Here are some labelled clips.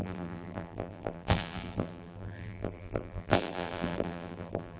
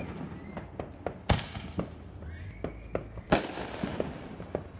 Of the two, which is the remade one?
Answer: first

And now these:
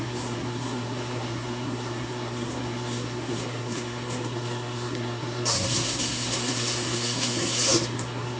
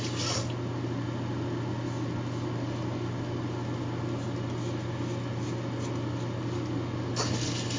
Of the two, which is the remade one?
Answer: first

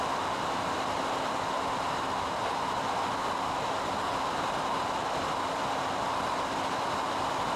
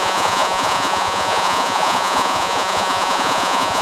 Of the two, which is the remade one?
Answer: second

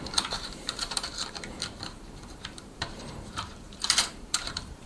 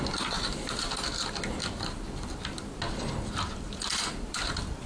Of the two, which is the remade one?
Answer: first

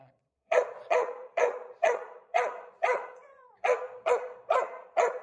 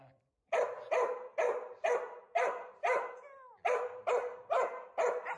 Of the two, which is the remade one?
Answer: first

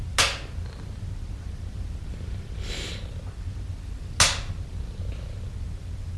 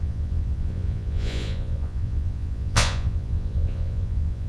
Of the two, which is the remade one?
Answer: second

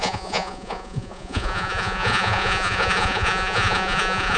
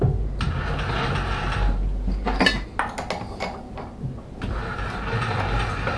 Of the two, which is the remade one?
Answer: first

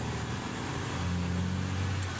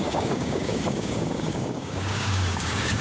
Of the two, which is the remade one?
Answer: second